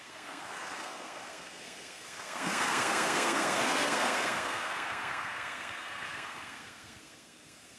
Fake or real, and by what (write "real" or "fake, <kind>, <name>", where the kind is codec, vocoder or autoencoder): fake, codec, SNAC